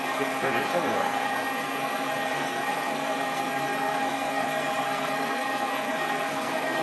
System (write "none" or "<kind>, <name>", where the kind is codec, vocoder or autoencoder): codec, SNAC